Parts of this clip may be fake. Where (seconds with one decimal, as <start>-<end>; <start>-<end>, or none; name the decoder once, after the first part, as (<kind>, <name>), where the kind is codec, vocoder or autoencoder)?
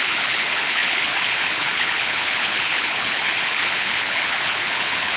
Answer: 0.0-5.2 (codec, HILCodec)